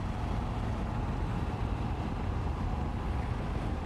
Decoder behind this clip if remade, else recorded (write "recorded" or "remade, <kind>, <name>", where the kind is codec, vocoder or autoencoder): recorded